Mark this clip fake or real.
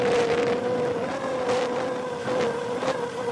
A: real